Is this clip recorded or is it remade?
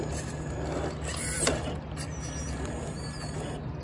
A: recorded